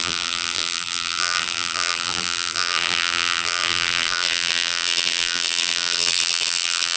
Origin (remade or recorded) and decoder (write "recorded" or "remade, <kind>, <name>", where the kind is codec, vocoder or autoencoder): remade, vocoder, BigVGAN v2